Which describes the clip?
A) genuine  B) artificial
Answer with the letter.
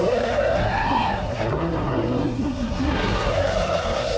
B